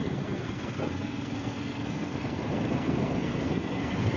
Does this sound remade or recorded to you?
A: remade